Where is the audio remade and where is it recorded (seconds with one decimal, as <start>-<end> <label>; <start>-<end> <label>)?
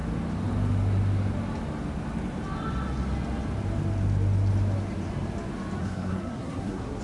0.0-5.8 recorded; 5.8-7.0 remade